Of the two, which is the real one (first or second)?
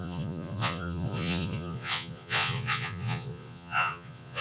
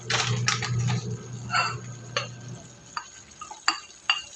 second